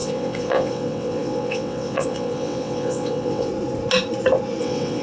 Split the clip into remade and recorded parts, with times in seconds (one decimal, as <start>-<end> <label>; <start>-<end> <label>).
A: 0.0-3.5 remade; 3.5-4.6 recorded; 4.6-5.0 remade